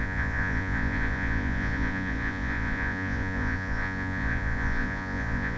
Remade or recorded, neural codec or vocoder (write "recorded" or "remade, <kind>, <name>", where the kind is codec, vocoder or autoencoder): remade, vocoder, Vocos